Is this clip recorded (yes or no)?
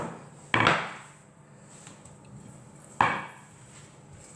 yes